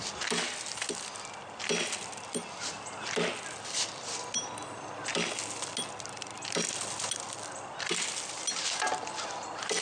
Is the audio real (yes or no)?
yes